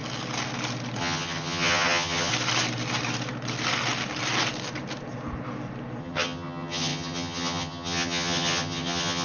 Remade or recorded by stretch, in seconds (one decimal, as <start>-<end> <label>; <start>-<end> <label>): 0.0-1.0 recorded; 1.0-2.3 remade; 2.3-6.0 recorded; 6.0-9.2 remade